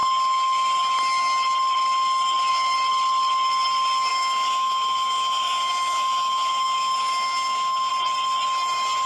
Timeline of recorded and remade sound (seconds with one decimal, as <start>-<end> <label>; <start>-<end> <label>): 0.0-4.1 recorded; 4.1-7.9 remade; 7.9-9.1 recorded